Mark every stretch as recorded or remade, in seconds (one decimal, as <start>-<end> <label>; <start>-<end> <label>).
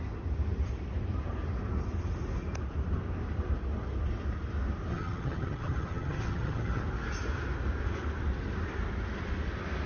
0.0-4.9 recorded; 4.9-6.8 remade; 6.8-9.9 recorded